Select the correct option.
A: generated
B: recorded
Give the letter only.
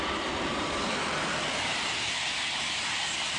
A